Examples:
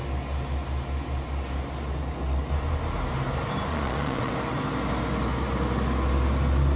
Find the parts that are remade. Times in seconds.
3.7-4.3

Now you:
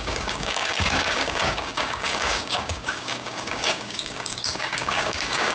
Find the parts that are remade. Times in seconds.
0.0-5.5

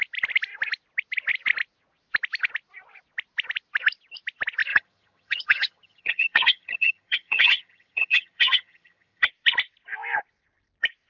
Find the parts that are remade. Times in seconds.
4.7-9.3

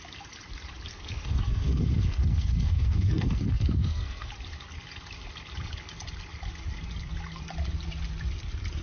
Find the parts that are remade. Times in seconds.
0.9-4.3

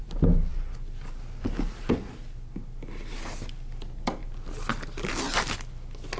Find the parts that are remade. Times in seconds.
none